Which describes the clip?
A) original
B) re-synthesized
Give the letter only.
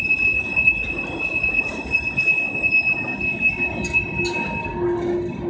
A